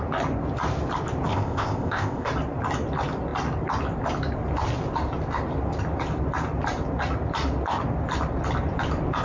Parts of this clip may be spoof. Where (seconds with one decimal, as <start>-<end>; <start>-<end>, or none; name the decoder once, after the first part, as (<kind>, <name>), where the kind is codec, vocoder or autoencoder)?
1.3-2.3 (codec, ZipCodec)